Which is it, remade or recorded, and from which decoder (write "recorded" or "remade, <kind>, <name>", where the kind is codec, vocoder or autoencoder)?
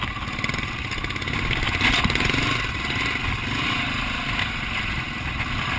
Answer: recorded